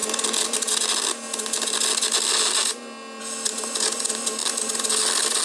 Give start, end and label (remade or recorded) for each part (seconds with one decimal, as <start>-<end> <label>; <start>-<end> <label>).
0.0-5.4 recorded